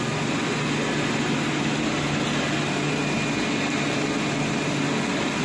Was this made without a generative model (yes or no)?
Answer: yes